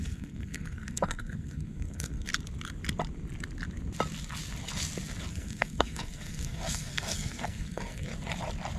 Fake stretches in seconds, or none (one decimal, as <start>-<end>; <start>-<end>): 0.0-2.3; 5.3-8.1

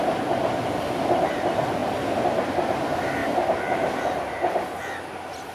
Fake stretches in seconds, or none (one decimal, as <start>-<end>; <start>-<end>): none